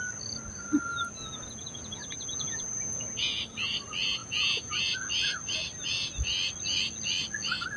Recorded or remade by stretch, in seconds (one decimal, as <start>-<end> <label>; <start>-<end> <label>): 0.0-0.9 recorded; 0.9-3.4 remade; 3.4-4.2 recorded; 4.2-4.8 remade; 4.8-7.8 recorded